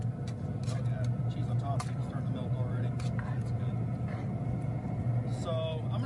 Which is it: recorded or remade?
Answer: recorded